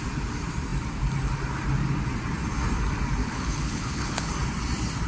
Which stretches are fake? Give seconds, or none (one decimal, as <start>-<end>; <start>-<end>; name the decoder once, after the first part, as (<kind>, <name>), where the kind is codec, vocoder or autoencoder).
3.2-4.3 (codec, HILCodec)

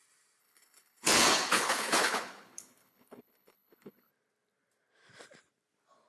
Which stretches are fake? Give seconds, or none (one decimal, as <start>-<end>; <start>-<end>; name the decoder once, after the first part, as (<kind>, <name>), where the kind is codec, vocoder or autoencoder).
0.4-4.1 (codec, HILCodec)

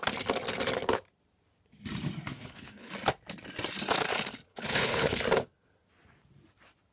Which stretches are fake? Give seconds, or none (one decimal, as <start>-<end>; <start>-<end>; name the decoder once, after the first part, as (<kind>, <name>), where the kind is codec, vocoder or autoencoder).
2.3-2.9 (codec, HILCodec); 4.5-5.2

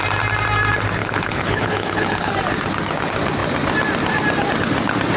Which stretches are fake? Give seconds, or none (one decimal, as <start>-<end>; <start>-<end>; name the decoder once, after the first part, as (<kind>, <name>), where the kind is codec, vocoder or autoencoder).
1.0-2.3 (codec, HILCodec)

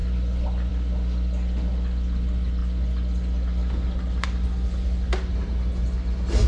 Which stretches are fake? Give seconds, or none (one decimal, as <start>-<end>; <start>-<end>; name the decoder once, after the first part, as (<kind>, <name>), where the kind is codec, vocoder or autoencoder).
none

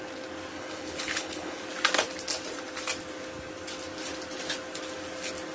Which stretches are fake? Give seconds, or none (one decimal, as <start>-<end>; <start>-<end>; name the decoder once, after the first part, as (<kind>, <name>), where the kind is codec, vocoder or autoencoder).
0.5-1.6 (codec, HILCodec)